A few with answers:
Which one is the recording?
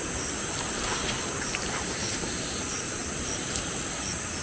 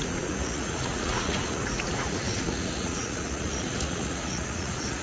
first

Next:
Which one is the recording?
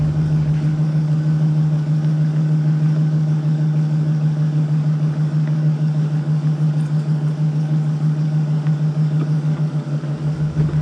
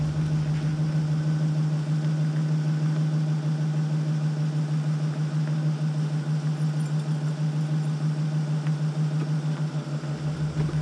second